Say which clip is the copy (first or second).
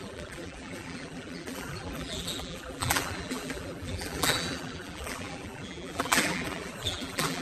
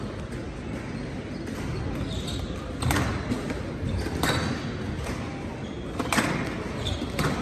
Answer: first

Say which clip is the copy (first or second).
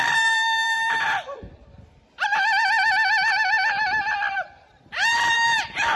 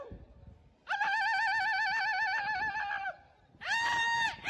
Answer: first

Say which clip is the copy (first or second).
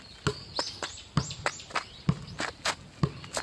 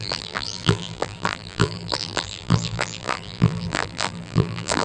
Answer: second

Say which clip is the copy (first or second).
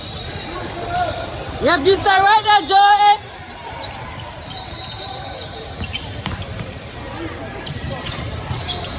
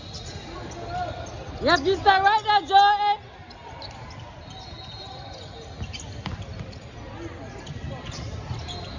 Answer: first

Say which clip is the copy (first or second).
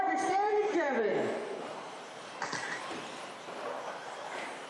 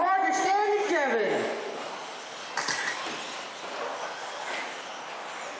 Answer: first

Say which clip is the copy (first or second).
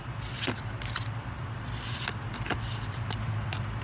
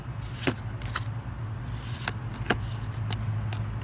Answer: first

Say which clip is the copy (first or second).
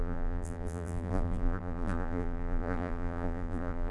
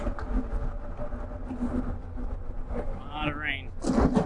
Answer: first